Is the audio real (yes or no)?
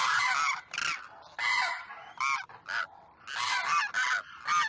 yes